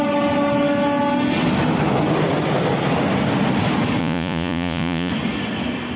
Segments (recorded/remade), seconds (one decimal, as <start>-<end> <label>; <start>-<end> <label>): 0.0-4.0 recorded; 4.0-5.1 remade; 5.1-6.0 recorded